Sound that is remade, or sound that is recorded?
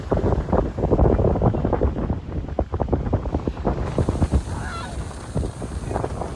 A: recorded